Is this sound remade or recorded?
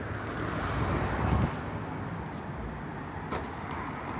recorded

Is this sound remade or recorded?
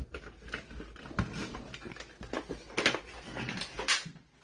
recorded